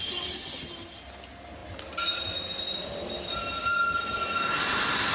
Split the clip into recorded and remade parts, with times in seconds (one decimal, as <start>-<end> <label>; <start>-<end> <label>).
0.0-5.1 recorded